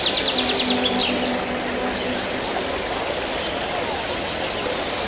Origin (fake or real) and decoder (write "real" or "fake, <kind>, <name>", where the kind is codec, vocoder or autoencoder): real